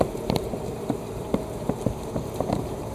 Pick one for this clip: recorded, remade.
remade